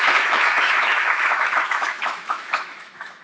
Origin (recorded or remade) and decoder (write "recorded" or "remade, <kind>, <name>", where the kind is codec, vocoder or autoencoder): remade, autoencoder, DAC-VAE